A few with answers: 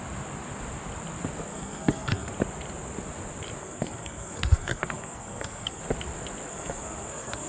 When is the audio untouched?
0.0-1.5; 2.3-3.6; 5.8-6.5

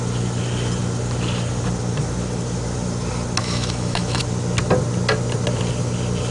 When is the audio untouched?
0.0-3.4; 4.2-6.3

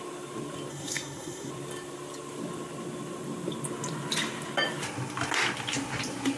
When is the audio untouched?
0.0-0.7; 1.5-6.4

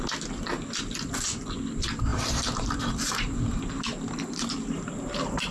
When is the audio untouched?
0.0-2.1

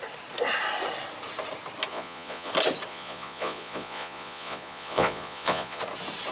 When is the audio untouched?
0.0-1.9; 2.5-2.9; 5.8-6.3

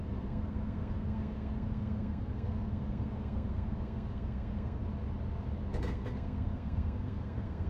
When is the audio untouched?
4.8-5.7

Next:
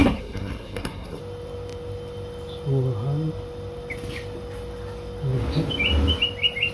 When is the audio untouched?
1.2-6.7

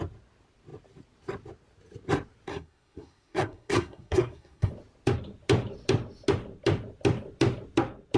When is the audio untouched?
0.0-2.5; 4.7-8.2